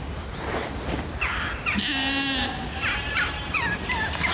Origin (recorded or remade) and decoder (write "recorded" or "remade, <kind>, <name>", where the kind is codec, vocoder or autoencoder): recorded